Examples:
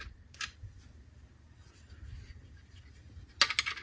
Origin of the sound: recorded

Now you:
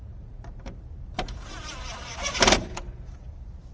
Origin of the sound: remade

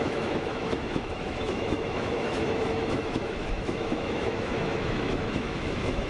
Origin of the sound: remade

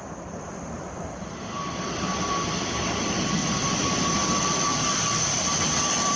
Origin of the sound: remade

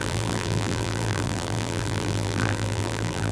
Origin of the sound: remade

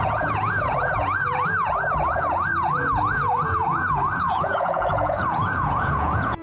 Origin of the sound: remade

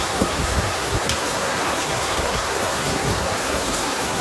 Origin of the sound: remade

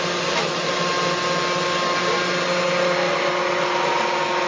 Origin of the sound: recorded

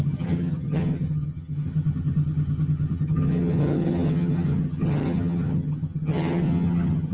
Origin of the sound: remade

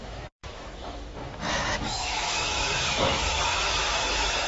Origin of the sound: remade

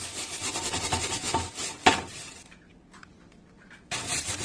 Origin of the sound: recorded